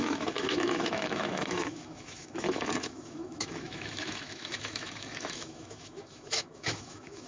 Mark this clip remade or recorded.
remade